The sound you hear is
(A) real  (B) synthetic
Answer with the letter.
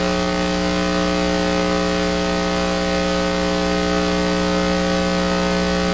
A